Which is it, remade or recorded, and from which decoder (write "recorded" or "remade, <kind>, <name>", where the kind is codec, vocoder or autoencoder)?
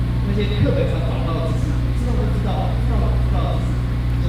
recorded